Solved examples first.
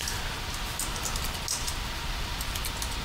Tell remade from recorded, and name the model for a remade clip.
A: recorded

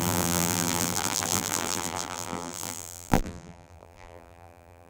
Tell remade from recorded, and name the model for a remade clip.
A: remade, vocoder, BigVGAN v2